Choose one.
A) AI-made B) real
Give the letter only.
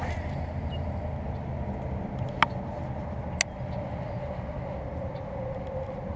B